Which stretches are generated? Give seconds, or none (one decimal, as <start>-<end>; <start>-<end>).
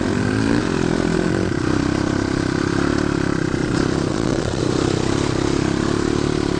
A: 4.1-4.6